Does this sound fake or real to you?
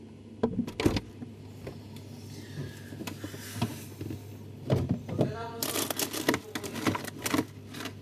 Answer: real